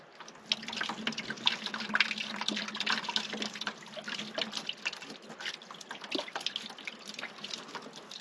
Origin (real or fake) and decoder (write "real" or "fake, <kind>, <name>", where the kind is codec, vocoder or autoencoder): real